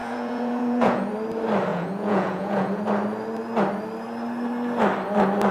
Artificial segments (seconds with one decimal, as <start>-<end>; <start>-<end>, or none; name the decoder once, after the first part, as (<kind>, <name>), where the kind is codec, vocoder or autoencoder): 0.0-1.1 (vocoder, Vocos); 1.7-2.8